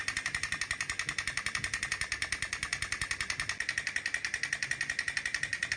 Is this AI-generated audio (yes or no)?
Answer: no